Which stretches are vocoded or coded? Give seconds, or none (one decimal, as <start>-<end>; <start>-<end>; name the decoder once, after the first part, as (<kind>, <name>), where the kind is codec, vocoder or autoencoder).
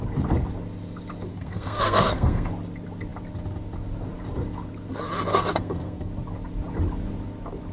1.3-2.5 (codec, SNAC); 5.3-6.1